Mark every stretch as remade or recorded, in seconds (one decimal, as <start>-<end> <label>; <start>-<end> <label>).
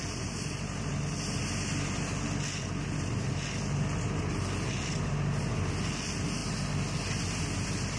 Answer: 0.0-8.0 recorded